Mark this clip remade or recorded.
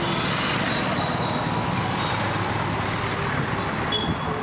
recorded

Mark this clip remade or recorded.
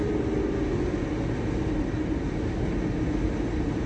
recorded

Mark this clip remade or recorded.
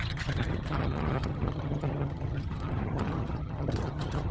remade